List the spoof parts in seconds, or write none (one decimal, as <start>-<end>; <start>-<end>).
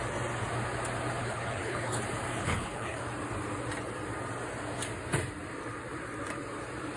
1.2-2.0; 2.4-3.0